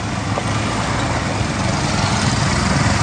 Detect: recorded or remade recorded